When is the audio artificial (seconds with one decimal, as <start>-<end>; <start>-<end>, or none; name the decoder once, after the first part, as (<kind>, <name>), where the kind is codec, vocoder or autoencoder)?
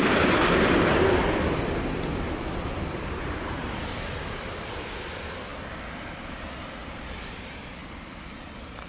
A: 0.0-5.5 (vocoder, BigVGAN v2); 7.2-7.8; 8.4-8.9